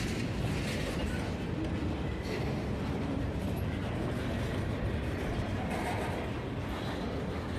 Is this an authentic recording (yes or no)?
yes